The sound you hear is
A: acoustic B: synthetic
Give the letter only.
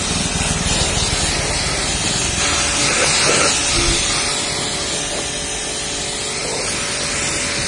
A